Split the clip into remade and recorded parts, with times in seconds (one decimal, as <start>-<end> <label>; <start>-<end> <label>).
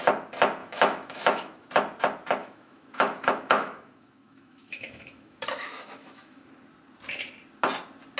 0.0-0.6 recorded; 0.6-1.7 remade; 1.7-2.4 recorded; 2.4-6.5 remade; 6.5-8.2 recorded